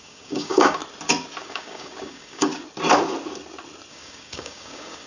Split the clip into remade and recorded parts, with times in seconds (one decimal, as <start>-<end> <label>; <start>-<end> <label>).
0.0-0.8 remade; 0.8-1.4 recorded; 1.4-2.5 remade; 2.5-3.9 recorded; 3.9-5.1 remade